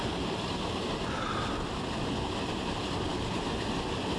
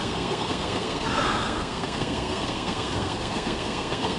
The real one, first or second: first